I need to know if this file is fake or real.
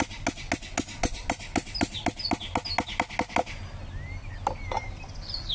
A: real